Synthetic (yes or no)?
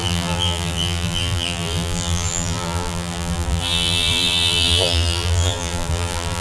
yes